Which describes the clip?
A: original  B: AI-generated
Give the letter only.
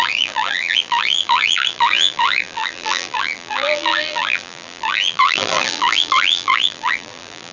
B